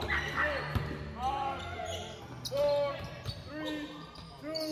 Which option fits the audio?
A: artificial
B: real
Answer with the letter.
B